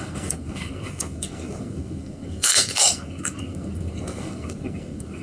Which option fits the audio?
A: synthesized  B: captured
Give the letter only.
A